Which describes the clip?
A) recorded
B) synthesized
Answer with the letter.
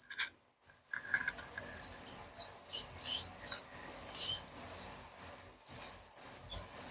A